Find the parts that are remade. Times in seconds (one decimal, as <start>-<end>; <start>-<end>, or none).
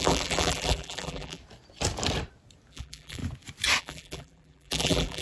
0.0-1.4; 2.7-3.2; 3.8-5.2